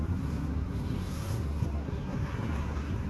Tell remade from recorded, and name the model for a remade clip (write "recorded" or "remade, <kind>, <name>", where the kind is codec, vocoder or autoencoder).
remade, codec, SNAC